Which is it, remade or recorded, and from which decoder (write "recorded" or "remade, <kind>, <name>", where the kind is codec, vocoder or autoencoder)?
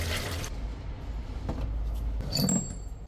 recorded